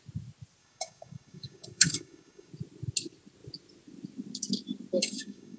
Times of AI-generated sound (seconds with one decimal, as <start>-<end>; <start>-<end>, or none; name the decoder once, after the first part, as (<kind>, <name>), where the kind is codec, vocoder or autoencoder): 0.6-2.5 (codec, DAC); 5.0-5.6